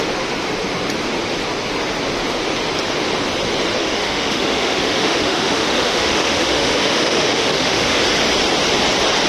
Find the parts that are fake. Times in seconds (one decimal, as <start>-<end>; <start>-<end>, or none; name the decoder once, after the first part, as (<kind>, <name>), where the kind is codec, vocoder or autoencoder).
3.8-8.0 (autoencoder, DAC-VAE)